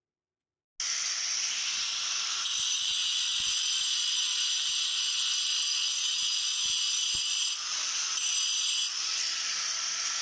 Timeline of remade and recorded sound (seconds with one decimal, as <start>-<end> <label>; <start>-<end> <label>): 0.0-10.2 recorded